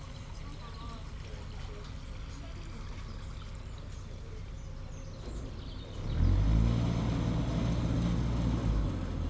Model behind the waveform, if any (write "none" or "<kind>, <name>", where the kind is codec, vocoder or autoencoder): none